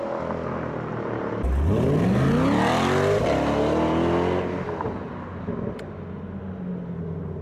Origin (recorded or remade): recorded